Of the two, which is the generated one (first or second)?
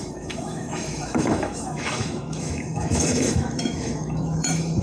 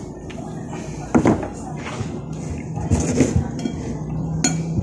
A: first